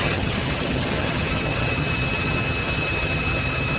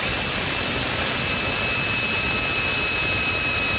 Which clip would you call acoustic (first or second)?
second